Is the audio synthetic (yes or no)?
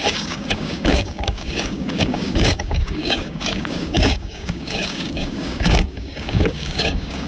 yes